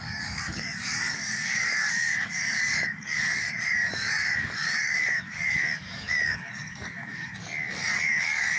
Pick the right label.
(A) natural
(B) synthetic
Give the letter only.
B